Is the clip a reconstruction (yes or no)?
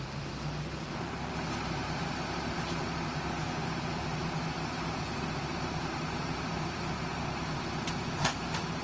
yes